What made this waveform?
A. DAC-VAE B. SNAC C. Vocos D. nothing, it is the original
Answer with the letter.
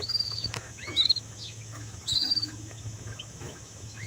A